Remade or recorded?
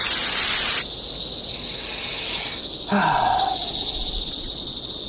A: recorded